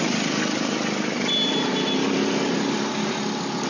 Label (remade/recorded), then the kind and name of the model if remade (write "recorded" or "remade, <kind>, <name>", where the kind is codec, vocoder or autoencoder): recorded